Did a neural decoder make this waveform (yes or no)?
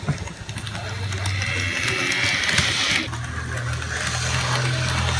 no